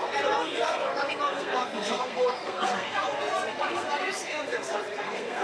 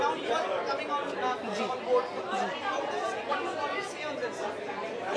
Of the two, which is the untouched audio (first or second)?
second